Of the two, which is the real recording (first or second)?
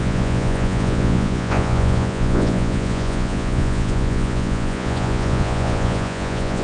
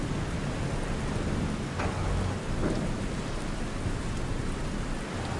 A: second